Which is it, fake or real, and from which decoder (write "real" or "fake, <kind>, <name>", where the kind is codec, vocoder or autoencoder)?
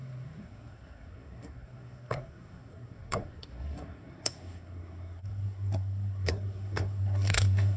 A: fake, codec, SNAC